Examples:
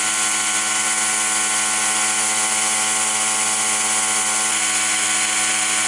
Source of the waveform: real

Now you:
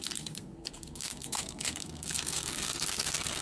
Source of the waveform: fake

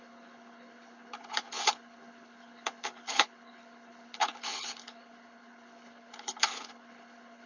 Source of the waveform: fake